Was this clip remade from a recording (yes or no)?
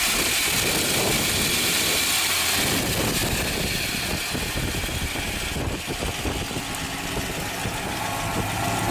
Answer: no